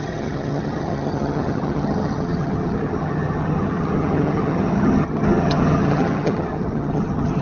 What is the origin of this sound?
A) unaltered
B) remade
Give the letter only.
B